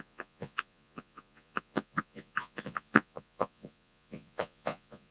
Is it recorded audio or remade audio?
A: remade